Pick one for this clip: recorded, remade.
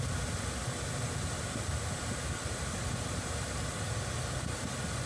recorded